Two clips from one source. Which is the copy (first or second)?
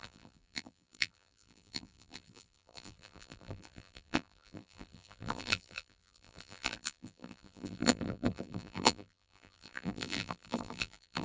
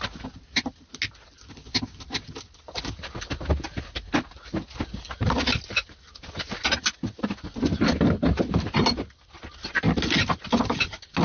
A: first